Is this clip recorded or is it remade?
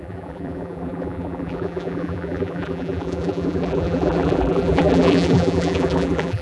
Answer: remade